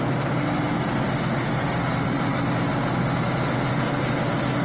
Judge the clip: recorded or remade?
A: recorded